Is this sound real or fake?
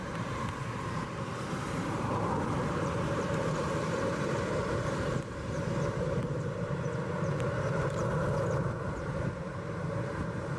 fake